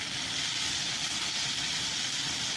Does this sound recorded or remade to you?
remade